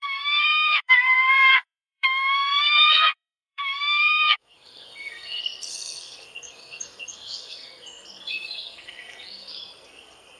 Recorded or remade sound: remade